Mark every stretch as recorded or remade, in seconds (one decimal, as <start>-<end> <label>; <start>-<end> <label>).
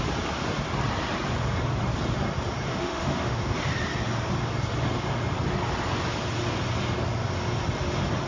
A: 0.0-2.7 recorded; 2.7-3.4 remade; 3.4-8.3 recorded